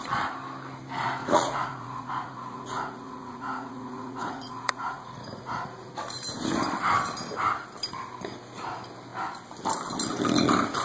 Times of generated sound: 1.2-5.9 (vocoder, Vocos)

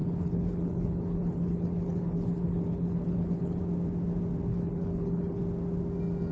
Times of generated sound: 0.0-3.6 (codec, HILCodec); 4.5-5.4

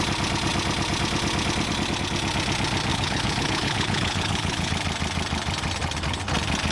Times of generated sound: 2.9-4.7 (codec, HILCodec)